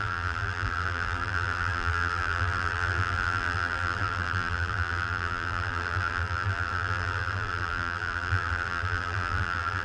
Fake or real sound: fake